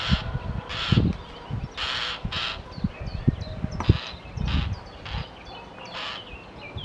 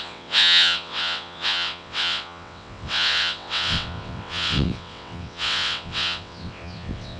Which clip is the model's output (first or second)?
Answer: second